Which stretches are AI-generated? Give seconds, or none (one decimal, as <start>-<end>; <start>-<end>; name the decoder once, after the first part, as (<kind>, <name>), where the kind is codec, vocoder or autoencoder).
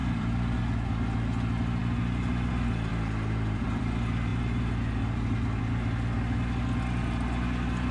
0.0-0.6 (vocoder, BigVGAN v2); 2.9-3.8